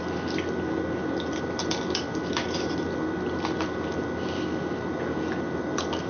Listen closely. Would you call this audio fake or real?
real